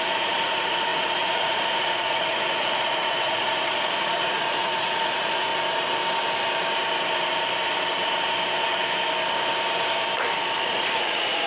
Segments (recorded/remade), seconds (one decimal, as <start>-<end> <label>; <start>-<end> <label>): 0.0-5.5 remade; 5.5-10.7 recorded; 10.7-11.5 remade